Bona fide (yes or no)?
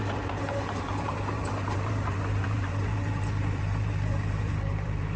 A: no